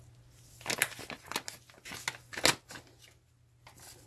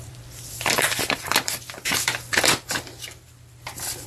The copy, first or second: second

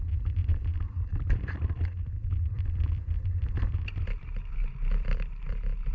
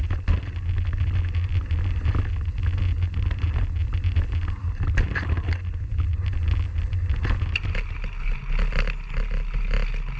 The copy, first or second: first